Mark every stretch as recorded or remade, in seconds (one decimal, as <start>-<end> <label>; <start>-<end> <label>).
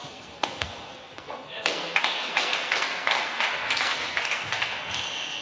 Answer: 0.0-5.4 remade